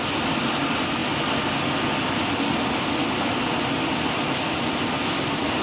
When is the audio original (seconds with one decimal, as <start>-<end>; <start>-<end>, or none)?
0.0-5.6

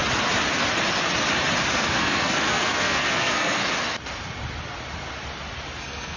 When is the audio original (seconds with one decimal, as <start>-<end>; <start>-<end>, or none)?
0.0-1.7; 3.6-5.8

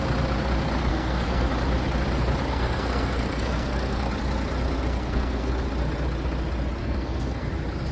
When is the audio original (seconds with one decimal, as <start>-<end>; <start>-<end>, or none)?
0.0-0.9; 1.5-2.5; 4.1-4.8; 5.5-6.8; 7.5-7.9

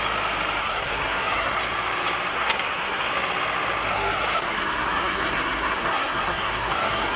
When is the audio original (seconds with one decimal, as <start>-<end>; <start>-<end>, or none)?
0.0-0.6; 1.6-2.3; 3.1-3.9

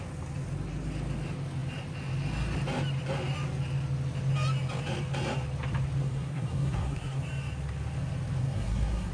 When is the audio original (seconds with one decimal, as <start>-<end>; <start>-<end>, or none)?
0.0-6.0; 7.2-8.4

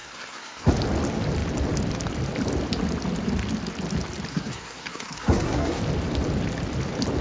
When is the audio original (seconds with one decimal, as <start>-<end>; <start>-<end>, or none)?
0.7-4.3; 5.8-7.2